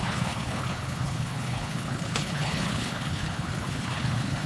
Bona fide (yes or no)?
no